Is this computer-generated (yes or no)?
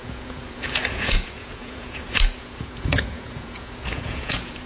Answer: yes